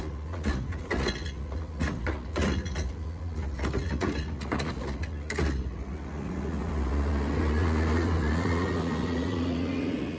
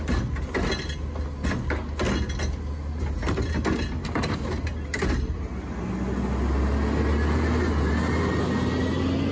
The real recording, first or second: second